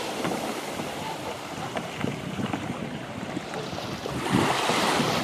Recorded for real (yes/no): yes